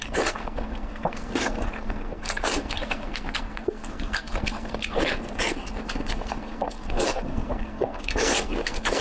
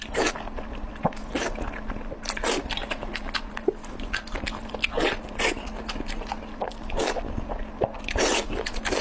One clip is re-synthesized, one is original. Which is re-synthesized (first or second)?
first